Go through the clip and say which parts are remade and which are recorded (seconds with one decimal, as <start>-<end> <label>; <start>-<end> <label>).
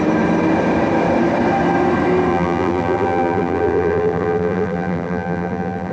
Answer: 0.0-2.3 recorded; 2.3-5.9 remade